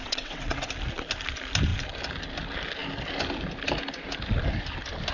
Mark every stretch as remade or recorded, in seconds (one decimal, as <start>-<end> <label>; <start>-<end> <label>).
0.0-0.7 remade; 0.7-5.1 recorded